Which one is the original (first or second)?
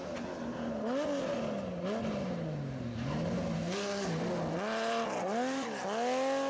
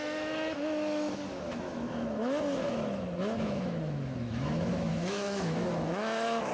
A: first